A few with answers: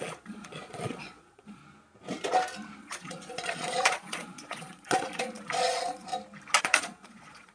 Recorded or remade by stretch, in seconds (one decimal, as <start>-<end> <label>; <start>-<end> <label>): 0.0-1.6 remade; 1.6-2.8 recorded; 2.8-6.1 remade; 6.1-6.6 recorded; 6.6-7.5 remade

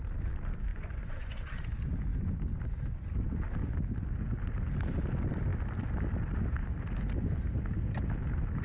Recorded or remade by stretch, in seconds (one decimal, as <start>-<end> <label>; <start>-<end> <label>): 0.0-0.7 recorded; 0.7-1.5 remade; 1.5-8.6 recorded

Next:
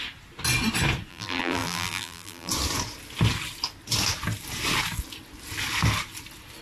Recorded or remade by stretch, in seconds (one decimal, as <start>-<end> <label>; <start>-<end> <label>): 0.0-1.1 recorded; 1.1-2.5 remade; 2.5-6.6 recorded

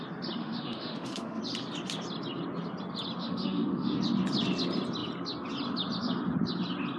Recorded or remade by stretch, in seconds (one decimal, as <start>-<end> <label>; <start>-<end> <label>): 0.0-0.4 recorded; 0.4-1.4 remade; 1.4-3.2 recorded; 3.2-4.0 remade; 4.0-7.0 recorded